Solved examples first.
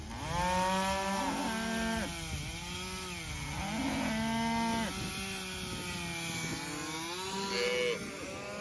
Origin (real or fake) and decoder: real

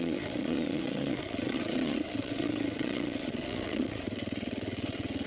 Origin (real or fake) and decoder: fake, vocoder, WaveNeXt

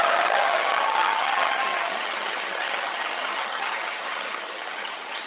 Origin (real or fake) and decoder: fake, vocoder, HiFi-GAN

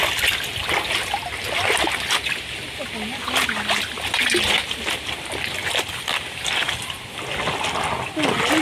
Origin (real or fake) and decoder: real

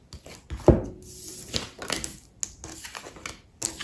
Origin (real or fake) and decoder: real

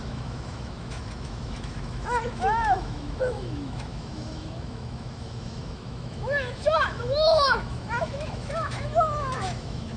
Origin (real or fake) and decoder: fake, autoencoder, DAC-VAE